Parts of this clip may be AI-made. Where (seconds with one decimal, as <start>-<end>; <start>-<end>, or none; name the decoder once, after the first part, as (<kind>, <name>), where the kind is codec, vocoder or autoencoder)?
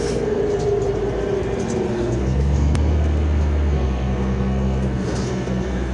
0.0-0.4 (codec, SNAC); 1.9-5.9